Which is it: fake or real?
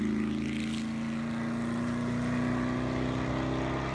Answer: real